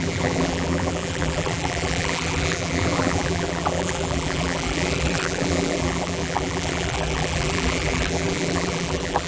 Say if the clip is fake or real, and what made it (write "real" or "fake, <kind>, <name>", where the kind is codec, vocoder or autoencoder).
fake, vocoder, BigVGAN v2